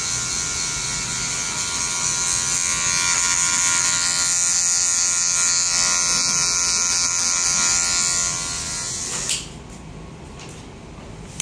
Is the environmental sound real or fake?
real